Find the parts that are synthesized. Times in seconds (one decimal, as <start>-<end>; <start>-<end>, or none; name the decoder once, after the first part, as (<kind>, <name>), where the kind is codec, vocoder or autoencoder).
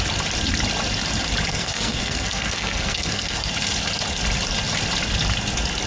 1.5-3.5 (codec, SNAC)